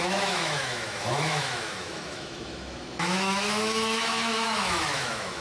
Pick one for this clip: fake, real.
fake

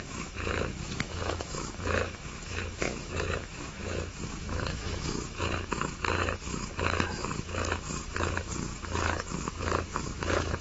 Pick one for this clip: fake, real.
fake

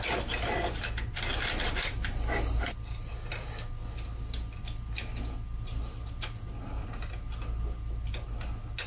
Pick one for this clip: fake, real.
real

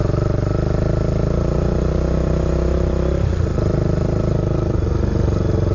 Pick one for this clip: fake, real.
real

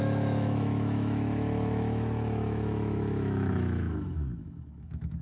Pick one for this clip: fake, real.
fake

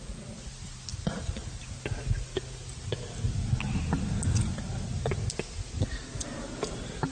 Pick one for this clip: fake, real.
real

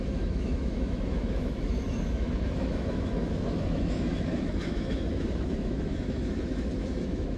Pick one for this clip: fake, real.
fake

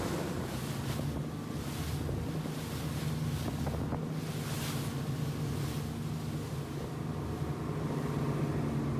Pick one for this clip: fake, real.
real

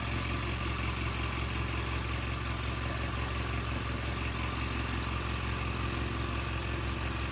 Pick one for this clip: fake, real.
real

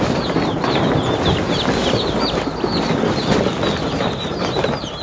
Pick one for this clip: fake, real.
real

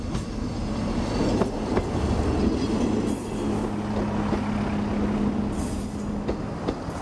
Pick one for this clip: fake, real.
real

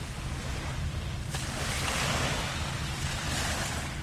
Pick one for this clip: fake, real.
real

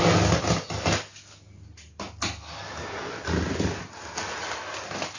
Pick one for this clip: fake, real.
real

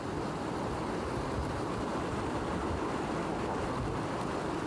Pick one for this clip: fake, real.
real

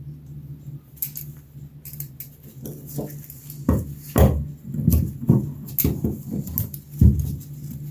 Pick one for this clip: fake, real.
real